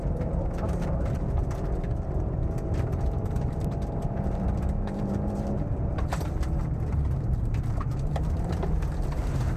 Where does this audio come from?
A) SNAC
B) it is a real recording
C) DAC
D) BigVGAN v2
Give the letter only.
D